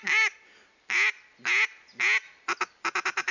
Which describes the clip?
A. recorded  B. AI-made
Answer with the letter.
A